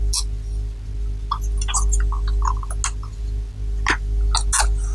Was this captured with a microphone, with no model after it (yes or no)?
yes